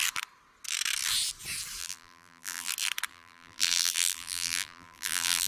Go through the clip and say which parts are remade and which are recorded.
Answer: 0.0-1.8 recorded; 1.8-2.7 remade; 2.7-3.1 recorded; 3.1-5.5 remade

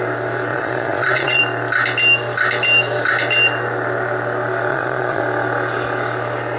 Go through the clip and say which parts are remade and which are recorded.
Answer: 0.0-0.5 recorded; 0.5-1.4 remade; 1.4-4.7 recorded; 4.7-5.2 remade; 5.2-6.6 recorded

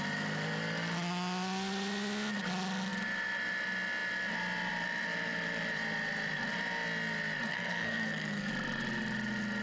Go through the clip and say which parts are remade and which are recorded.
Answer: 0.0-7.5 recorded; 7.5-8.5 remade; 8.5-9.6 recorded

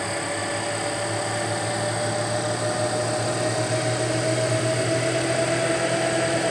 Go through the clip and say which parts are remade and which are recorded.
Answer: 0.0-6.5 recorded

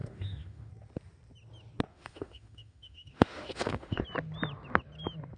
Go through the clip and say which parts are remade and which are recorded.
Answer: 0.0-0.7 remade; 0.7-1.9 recorded; 1.9-4.0 remade; 4.0-5.4 recorded

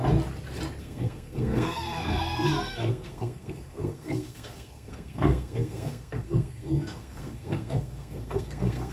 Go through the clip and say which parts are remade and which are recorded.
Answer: 0.0-0.8 recorded; 0.8-8.9 remade